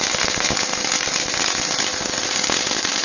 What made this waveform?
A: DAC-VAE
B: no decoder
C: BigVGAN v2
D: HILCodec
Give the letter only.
B